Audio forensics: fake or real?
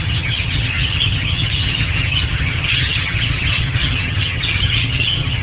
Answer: fake